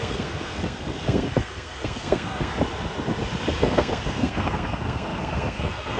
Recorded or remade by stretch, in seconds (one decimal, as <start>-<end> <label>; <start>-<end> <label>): 0.0-2.5 remade; 2.5-3.6 recorded; 3.6-6.0 remade